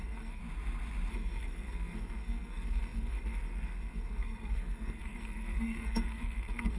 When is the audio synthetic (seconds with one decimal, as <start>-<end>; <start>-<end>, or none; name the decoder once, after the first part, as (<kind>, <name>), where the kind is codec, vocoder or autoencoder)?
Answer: 0.0-0.4 (codec, SNAC); 1.1-6.8